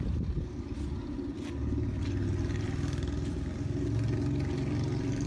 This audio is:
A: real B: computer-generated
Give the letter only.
A